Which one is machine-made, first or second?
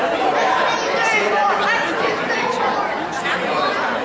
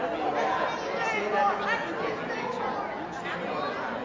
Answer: first